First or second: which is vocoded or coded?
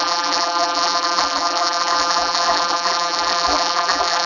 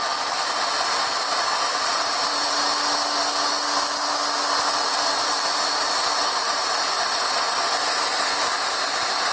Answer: first